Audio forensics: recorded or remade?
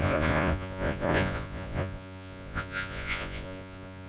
remade